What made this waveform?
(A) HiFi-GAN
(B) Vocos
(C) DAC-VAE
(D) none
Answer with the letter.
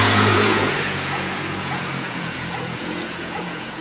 B